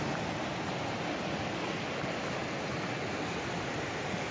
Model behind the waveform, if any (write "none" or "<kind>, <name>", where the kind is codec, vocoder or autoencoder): none